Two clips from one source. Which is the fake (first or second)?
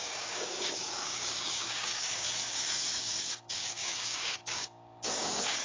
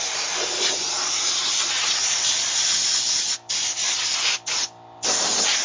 first